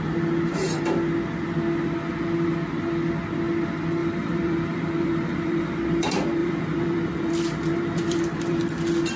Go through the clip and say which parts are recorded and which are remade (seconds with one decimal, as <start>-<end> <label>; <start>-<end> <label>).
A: 0.0-4.0 recorded; 4.0-5.7 remade; 5.7-6.4 recorded; 6.4-8.6 remade; 8.6-9.2 recorded